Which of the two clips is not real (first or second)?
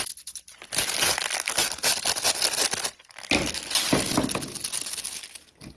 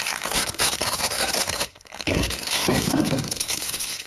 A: second